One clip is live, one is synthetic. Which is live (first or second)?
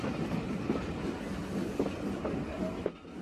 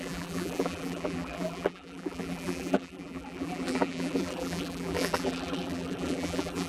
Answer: first